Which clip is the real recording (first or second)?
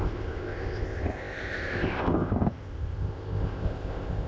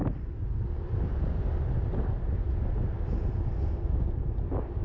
second